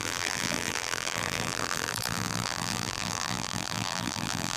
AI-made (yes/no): yes